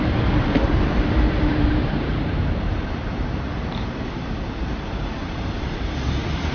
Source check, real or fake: fake